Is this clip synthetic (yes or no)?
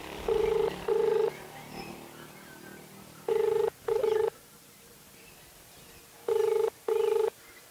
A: yes